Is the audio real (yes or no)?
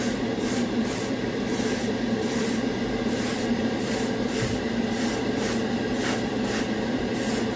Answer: no